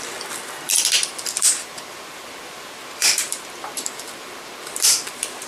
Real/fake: fake